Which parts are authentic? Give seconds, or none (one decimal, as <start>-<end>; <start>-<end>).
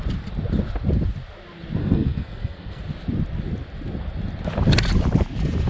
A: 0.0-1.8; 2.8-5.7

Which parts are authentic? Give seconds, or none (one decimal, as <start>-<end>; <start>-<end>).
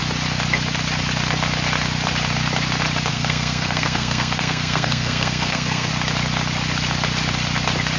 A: 0.0-3.1; 5.9-8.0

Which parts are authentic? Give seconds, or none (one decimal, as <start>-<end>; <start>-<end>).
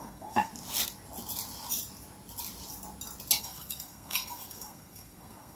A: 0.5-3.4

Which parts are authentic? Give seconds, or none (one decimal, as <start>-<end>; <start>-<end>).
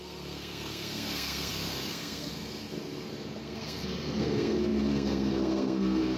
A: none